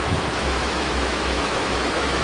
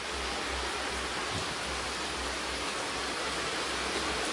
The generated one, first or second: first